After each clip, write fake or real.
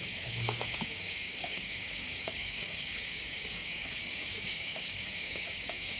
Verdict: fake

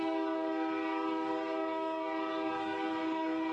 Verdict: fake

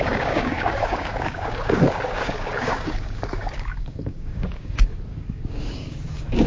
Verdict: fake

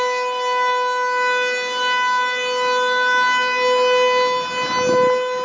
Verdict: real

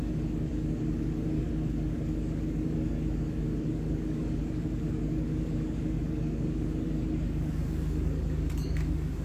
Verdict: fake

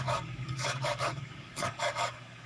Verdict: fake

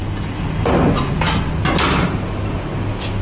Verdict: real